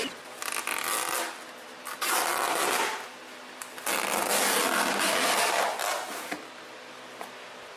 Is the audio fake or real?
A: real